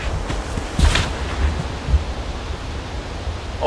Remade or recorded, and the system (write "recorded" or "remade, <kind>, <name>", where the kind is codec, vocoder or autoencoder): recorded